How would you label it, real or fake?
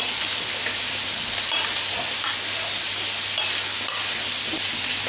real